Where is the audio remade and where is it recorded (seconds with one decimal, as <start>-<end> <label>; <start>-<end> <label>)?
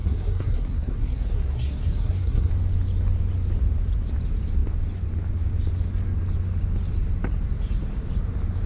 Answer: 0.0-2.5 remade; 2.5-8.7 recorded